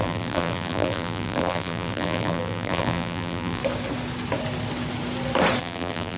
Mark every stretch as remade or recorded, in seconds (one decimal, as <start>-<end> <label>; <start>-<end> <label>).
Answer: 0.0-3.6 remade; 3.6-5.6 recorded; 5.6-6.2 remade